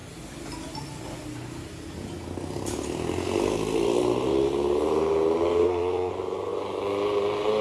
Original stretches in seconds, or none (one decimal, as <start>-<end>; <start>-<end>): 0.0-5.6; 6.1-7.6